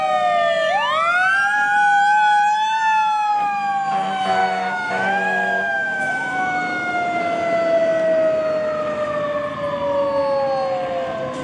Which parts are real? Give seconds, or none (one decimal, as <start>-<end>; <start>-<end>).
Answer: 0.0-4.4; 7.2-11.4